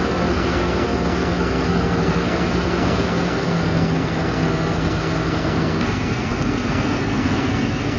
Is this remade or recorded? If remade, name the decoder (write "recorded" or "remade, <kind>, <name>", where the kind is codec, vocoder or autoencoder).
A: remade, codec, SNAC